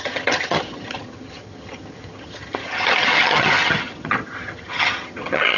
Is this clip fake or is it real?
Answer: fake